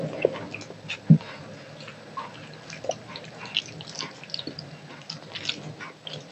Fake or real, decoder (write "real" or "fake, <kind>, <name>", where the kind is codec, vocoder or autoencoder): real